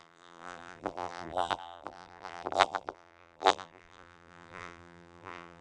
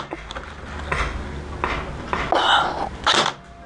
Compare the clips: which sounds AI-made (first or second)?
first